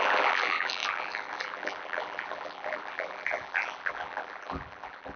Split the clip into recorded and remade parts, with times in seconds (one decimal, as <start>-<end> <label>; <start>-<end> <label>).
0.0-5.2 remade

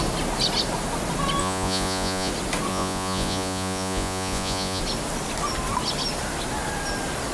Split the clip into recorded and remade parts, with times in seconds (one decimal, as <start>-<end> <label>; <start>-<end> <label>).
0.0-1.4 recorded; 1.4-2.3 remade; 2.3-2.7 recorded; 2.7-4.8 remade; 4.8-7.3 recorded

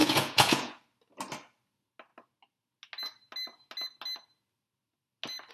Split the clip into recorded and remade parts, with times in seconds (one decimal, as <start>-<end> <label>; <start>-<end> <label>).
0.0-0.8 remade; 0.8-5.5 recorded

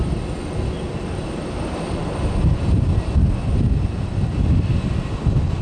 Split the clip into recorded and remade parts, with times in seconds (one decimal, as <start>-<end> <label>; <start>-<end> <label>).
0.0-5.6 recorded

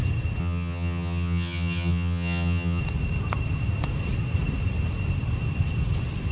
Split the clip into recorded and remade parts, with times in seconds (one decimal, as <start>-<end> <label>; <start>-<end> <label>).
0.0-0.4 recorded; 0.4-2.8 remade; 2.8-6.3 recorded